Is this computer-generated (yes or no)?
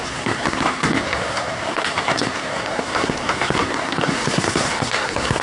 yes